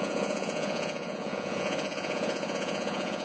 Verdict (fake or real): fake